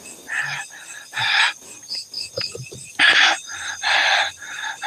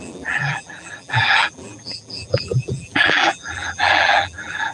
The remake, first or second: second